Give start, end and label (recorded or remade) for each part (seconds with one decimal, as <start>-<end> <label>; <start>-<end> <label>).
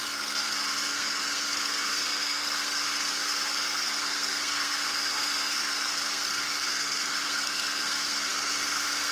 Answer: 0.0-9.1 remade